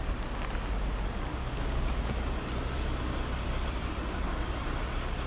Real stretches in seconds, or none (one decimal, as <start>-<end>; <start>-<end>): 0.0-1.3; 1.9-5.3